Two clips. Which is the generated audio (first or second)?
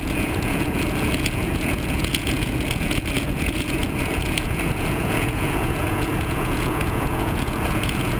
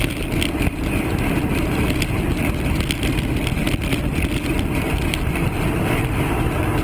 first